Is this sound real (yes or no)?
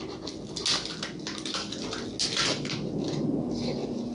yes